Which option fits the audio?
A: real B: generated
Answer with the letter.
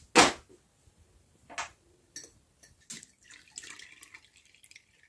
A